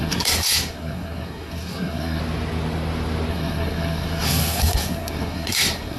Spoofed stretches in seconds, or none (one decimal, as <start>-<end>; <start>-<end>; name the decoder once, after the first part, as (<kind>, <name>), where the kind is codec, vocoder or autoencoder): 0.0-2.2 (codec, SNAC); 3.3-6.0